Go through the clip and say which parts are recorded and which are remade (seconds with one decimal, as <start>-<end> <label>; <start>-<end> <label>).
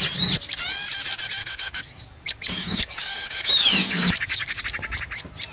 0.0-1.4 recorded; 1.4-4.6 remade; 4.6-5.5 recorded